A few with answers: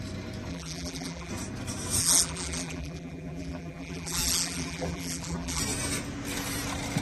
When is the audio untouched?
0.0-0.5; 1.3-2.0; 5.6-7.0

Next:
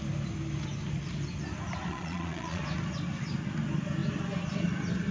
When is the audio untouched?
0.0-1.9; 2.6-5.1

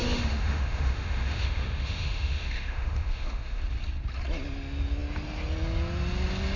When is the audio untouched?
3.6-6.6